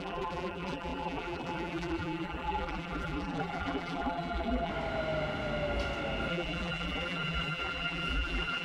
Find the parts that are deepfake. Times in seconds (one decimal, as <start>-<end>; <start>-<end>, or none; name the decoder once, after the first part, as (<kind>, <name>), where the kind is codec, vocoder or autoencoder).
0.0-4.7 (vocoder, BigVGAN v2); 6.3-8.6